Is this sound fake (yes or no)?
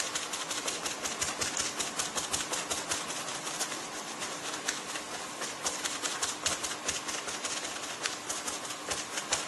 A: no